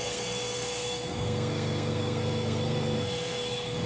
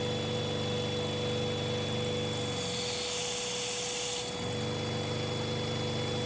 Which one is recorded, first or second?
second